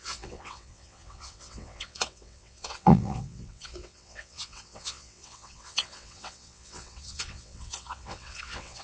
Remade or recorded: remade